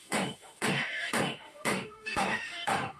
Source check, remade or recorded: remade